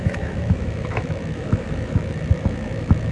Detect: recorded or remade remade